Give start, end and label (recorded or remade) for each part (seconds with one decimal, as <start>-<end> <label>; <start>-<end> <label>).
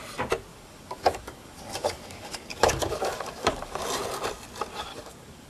0.0-0.5 recorded; 0.5-3.8 remade; 3.8-4.9 recorded; 4.9-5.5 remade